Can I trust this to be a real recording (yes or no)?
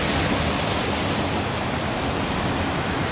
yes